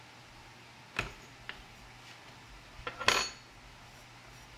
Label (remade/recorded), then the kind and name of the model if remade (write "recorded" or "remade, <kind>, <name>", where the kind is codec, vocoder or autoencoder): recorded